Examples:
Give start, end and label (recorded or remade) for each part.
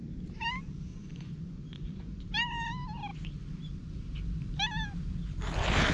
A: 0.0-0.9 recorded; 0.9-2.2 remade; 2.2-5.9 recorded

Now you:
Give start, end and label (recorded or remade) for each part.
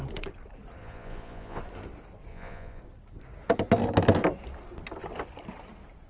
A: 0.0-0.8 recorded; 0.8-1.6 remade; 1.6-2.3 recorded; 2.3-2.8 remade; 2.8-6.1 recorded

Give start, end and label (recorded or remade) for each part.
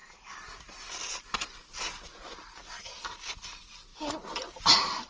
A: 0.0-5.1 recorded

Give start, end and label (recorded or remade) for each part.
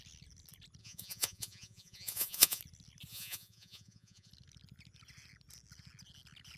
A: 0.0-0.8 recorded; 0.8-2.6 remade; 2.6-3.1 recorded; 3.1-4.3 remade; 4.3-6.6 recorded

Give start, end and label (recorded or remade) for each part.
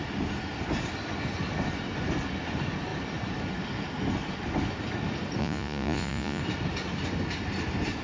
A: 0.0-5.4 recorded; 5.4-6.4 remade; 6.4-8.0 recorded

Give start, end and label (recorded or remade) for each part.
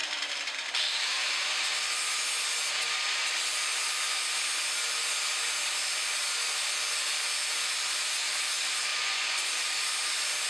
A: 0.0-8.9 recorded; 8.9-9.5 remade; 9.5-10.5 recorded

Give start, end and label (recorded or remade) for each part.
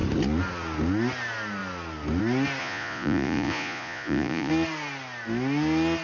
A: 0.0-2.6 recorded; 2.6-4.5 remade; 4.5-6.0 recorded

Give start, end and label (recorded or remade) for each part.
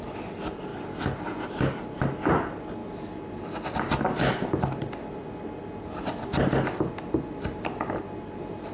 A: 0.0-8.7 recorded